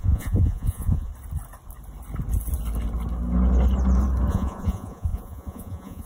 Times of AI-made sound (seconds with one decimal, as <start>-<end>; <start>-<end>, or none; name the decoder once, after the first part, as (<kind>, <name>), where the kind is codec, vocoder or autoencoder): 0.0-1.1 (vocoder, Vocos); 4.3-6.1